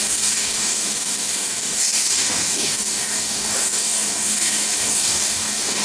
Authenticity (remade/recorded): remade